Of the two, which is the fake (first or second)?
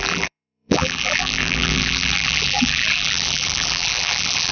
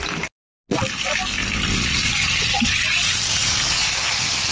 first